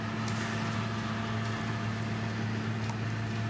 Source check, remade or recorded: recorded